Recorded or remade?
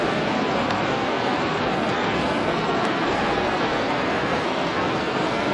remade